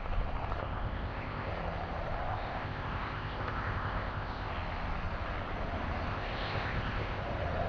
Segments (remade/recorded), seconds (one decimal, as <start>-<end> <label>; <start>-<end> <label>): 0.0-0.6 recorded; 0.6-1.5 remade; 1.5-2.3 recorded; 2.3-4.5 remade; 4.5-6.1 recorded; 6.1-7.2 remade; 7.2-7.7 recorded